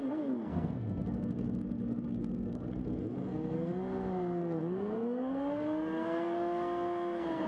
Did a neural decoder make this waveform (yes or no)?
yes